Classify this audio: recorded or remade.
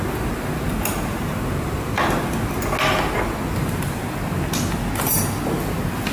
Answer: recorded